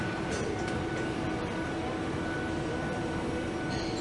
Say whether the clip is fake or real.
real